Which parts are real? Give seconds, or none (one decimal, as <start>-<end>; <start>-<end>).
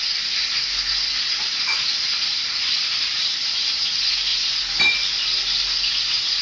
0.0-2.4; 3.4-6.4